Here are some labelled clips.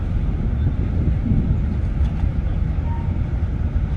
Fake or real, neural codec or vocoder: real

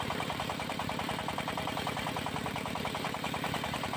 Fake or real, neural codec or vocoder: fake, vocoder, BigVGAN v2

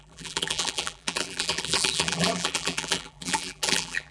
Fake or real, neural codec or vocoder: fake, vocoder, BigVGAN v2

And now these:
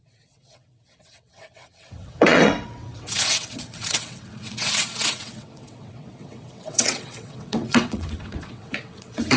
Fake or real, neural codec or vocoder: fake, vocoder, WaveNeXt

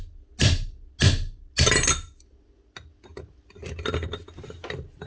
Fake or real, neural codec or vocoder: real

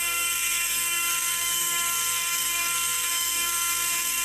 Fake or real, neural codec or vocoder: fake, codec, SNAC